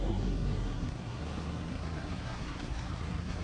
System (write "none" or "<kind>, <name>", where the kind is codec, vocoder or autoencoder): codec, SNAC